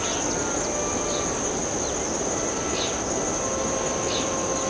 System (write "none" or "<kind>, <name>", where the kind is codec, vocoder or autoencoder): none